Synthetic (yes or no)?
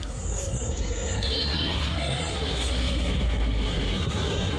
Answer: yes